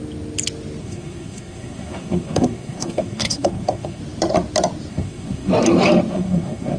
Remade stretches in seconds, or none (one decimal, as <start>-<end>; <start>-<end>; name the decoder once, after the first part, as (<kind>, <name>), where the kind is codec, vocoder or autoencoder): 0.8-4.0 (codec, SNAC); 4.9-5.5; 6.1-6.8